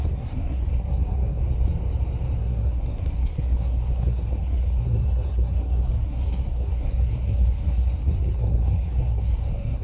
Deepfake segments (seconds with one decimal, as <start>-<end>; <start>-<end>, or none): 0.0-1.4; 2.4-9.8